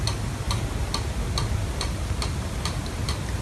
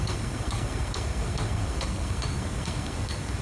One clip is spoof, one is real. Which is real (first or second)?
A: first